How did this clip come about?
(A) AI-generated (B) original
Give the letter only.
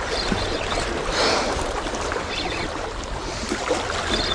B